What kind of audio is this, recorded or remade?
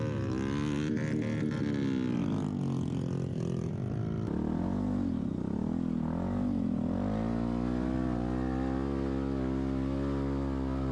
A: recorded